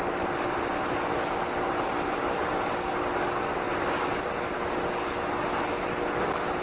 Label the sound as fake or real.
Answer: real